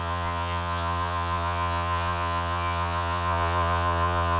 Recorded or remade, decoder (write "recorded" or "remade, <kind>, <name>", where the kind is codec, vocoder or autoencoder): remade, vocoder, Vocos